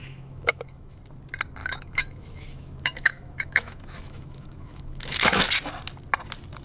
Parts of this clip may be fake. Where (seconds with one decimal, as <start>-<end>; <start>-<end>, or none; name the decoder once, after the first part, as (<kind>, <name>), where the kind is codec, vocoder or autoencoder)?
0.0-1.0 (autoencoder, DAC-VAE); 1.6-5.4